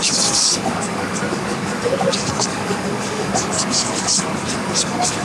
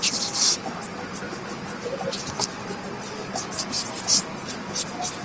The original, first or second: second